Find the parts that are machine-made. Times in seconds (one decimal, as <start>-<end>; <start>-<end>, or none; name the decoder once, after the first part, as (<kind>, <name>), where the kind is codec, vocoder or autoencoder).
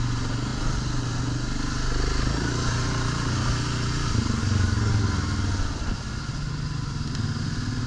4.4-4.9 (codec, DAC)